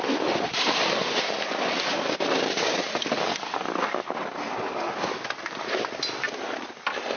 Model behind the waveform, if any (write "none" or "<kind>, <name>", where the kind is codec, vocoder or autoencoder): none